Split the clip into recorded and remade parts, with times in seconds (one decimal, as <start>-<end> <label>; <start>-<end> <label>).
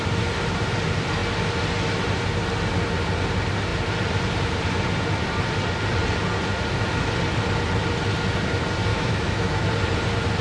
0.0-8.9 recorded; 8.9-9.7 remade; 9.7-10.4 recorded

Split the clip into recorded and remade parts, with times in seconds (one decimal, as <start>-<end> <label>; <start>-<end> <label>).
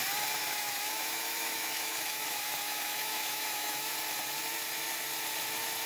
0.0-0.4 recorded; 0.4-3.9 remade; 3.9-5.9 recorded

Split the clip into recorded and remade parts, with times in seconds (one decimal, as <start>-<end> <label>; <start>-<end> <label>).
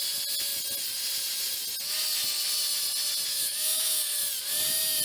0.0-3.3 recorded; 3.3-4.0 remade; 4.0-5.0 recorded